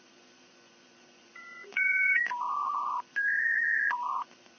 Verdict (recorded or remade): remade